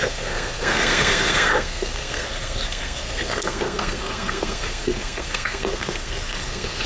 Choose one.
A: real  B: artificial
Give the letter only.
B